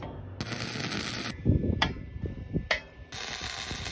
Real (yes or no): yes